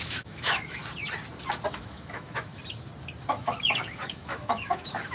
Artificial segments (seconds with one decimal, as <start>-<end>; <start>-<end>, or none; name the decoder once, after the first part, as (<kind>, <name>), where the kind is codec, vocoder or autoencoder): 0.0-0.8 (autoencoder, DAC-VAE); 1.7-2.6; 3.3-5.1